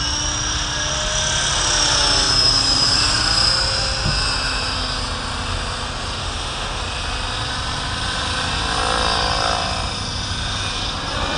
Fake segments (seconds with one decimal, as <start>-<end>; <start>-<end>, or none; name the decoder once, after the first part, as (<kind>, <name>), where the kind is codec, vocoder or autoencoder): 6.2-6.8 (autoencoder, DAC-VAE)